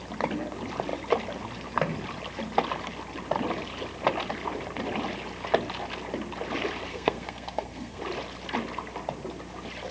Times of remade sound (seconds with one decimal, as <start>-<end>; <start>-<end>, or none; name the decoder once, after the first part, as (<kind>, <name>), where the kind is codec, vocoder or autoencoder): 6.9-8.0 (codec, SNAC)